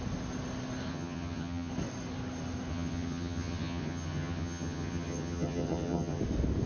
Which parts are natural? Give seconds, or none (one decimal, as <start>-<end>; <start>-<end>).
0.0-0.9; 1.7-2.7; 6.2-6.7